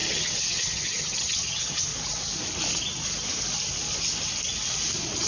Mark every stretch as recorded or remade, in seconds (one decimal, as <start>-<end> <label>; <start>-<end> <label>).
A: 0.0-1.9 remade; 1.9-5.3 recorded